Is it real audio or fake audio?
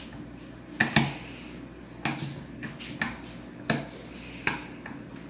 real